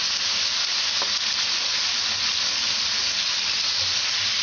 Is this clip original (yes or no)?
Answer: yes